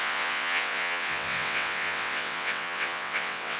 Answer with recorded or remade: remade